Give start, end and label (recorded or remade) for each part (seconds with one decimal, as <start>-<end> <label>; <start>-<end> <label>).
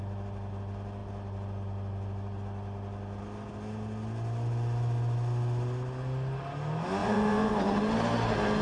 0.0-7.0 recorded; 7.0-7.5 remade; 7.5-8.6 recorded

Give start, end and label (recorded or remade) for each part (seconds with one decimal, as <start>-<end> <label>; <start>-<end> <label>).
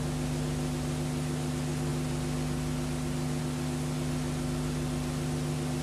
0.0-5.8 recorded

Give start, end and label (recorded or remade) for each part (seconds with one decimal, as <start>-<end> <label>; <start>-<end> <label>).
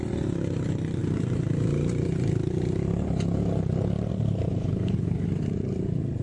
0.0-4.6 recorded; 4.6-5.3 remade; 5.3-6.2 recorded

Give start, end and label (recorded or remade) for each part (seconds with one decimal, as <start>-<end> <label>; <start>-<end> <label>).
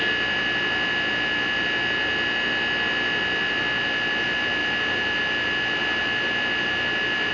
0.0-7.3 recorded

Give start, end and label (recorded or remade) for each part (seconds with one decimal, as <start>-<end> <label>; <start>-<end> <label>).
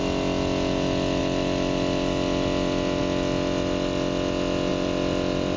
0.0-4.7 recorded; 4.7-5.6 remade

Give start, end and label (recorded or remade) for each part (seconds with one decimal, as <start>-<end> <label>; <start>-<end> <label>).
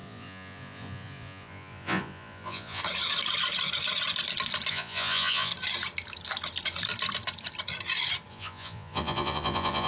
0.0-2.8 remade; 2.8-4.7 recorded; 4.7-5.5 remade; 5.5-8.3 recorded; 8.3-9.9 remade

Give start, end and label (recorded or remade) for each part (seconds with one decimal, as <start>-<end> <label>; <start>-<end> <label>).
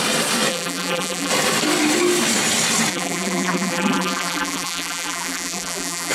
0.0-0.5 recorded; 0.5-1.3 remade; 1.3-2.9 recorded; 2.9-6.1 remade